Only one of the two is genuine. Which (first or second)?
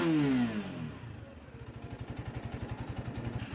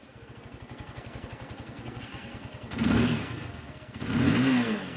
first